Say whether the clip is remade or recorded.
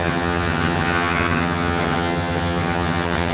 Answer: remade